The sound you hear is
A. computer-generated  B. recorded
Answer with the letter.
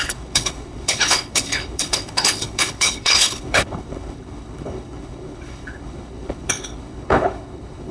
A